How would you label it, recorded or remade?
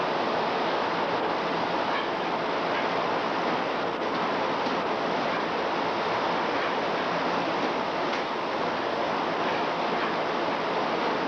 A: recorded